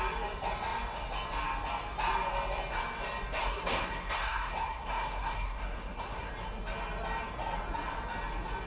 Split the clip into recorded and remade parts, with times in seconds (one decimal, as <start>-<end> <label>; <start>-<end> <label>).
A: 0.0-3.4 recorded; 3.4-6.3 remade; 6.3-8.7 recorded

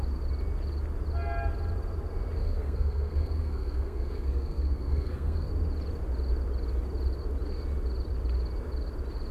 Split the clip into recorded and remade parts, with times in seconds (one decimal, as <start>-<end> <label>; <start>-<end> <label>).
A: 0.0-2.4 recorded; 2.4-5.5 remade; 5.5-9.3 recorded

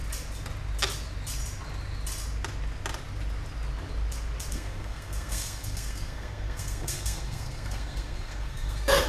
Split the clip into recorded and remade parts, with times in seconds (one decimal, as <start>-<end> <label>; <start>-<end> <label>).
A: 0.0-4.5 recorded; 4.5-9.1 remade

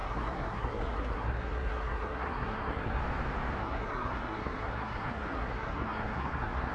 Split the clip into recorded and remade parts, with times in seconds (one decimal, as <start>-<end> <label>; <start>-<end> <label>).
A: 0.0-3.0 remade; 3.0-3.6 recorded; 3.6-6.7 remade

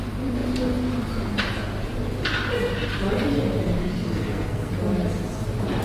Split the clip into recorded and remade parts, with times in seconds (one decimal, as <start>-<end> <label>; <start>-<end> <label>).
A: 0.0-3.8 recorded; 3.8-4.7 remade; 4.7-5.8 recorded

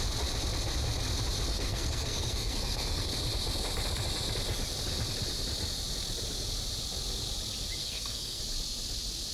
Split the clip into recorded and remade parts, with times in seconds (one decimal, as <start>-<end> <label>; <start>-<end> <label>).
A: 0.0-1.5 recorded; 1.5-3.1 remade; 3.1-7.8 recorded; 7.8-8.4 remade; 8.4-9.3 recorded

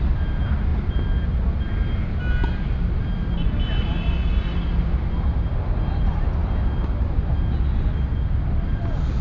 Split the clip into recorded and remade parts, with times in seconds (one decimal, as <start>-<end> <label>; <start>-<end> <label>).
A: 0.0-9.2 recorded